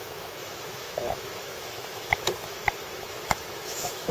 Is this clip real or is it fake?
fake